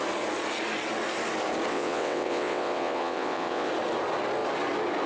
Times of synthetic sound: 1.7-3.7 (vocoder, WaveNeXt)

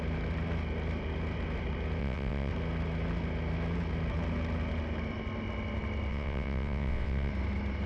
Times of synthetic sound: 2.0-2.5 (vocoder, WaveNeXt); 6.1-7.3

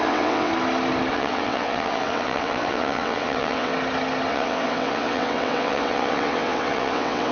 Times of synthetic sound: 0.0-0.5 (vocoder, WaveNeXt); 1.1-3.7; 4.3-7.3

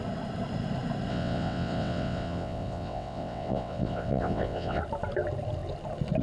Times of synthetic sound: 1.1-4.8 (vocoder, WaveNeXt)

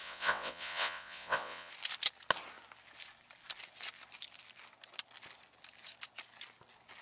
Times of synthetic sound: 0.0-1.7 (vocoder, WaveNeXt)

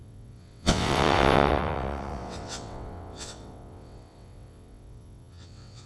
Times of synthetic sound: 0.0-5.9 (vocoder, WaveNeXt)